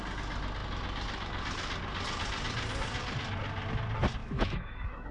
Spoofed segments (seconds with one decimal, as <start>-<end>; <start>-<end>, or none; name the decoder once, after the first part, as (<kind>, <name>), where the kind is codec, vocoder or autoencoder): 4.2-5.1 (autoencoder, DAC-VAE)